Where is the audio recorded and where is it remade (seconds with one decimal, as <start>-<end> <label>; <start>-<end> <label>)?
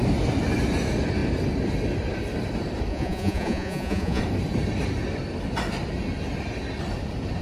0.0-2.9 recorded; 2.9-4.2 remade; 4.2-7.4 recorded